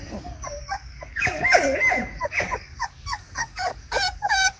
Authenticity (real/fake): fake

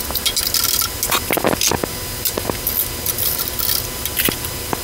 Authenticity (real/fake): real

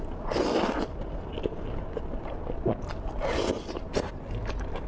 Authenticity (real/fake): real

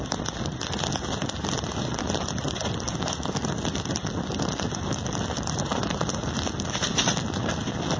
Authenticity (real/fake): real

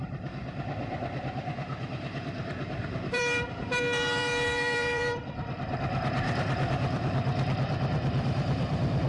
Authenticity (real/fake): fake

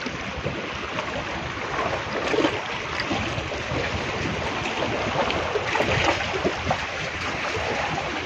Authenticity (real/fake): real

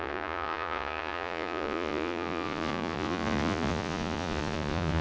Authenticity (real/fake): fake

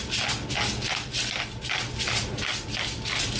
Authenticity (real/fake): real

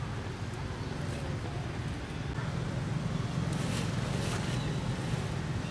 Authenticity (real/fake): real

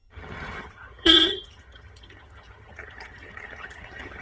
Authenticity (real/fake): fake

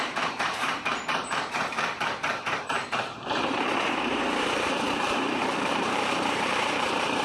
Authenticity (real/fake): fake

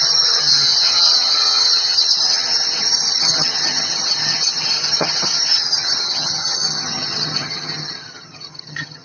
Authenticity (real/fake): fake